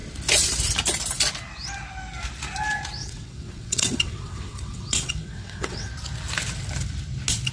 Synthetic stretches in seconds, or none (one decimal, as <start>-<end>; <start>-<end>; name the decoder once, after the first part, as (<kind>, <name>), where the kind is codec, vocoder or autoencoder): 3.0-5.9 (vocoder, WaveNeXt)